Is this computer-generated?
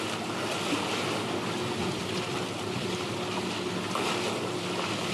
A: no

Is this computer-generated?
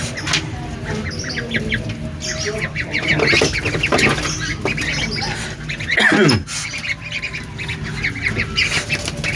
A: no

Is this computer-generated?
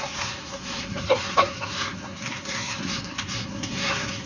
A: yes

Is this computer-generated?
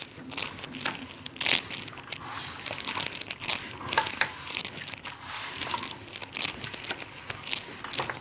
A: no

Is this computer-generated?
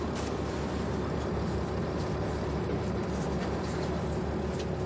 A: no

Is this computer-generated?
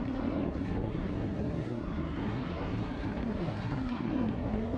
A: yes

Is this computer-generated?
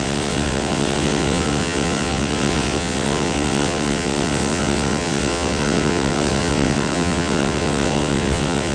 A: yes